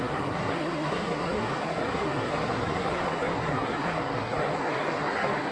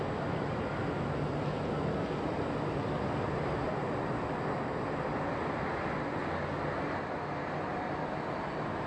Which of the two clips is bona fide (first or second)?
second